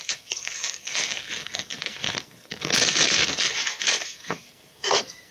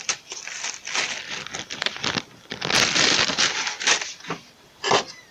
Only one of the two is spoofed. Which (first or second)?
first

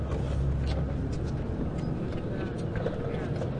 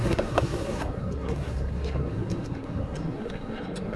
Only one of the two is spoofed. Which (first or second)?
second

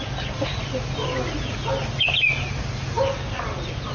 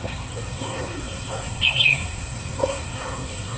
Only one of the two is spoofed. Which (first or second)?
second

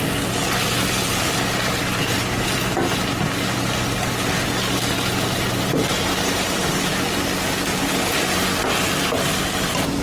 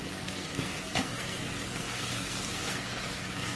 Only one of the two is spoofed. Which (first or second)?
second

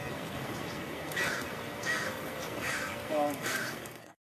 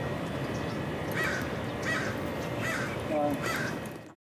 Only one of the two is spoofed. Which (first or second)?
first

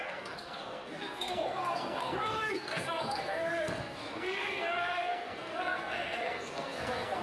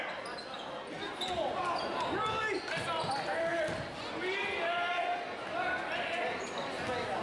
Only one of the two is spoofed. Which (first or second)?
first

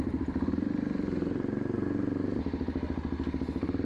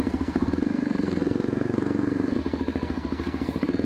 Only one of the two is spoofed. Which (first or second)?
second